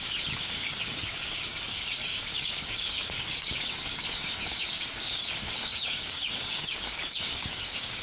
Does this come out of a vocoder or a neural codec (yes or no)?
yes